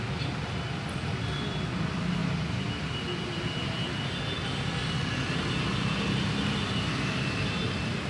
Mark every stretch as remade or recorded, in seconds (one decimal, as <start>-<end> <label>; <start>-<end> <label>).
0.0-8.1 recorded